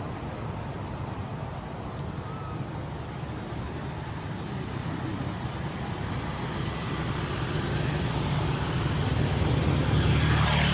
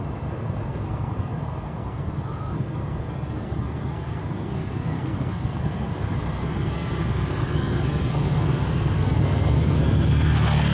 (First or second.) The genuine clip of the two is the first